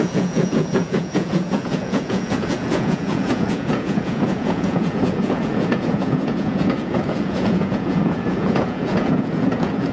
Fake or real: fake